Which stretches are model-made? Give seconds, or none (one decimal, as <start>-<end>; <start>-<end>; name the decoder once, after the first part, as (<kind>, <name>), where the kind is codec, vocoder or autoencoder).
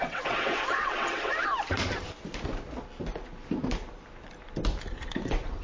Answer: 0.0-1.5 (vocoder, WaveNeXt); 4.9-5.6